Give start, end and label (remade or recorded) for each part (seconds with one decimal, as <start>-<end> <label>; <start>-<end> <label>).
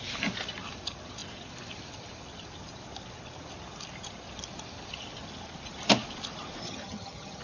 0.0-6.6 recorded; 6.6-7.4 remade